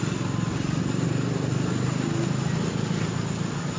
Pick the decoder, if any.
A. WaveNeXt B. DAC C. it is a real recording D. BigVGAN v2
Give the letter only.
C